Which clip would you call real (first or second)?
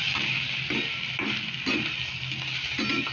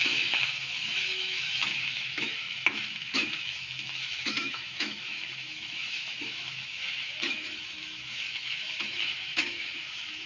first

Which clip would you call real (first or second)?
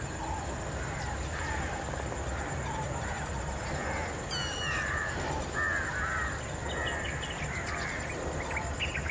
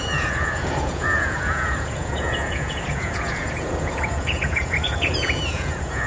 first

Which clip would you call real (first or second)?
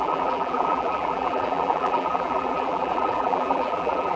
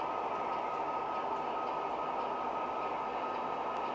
second